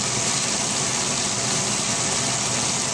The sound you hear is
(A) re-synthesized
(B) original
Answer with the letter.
B